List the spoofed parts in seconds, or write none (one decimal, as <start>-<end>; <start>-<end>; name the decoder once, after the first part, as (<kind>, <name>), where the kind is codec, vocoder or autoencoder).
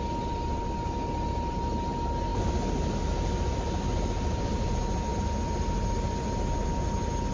none